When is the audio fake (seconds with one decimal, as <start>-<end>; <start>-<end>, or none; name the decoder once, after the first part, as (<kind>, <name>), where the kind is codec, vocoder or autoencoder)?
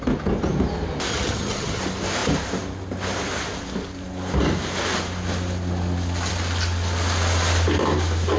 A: 1.1-1.8 (vocoder, HiFi-GAN)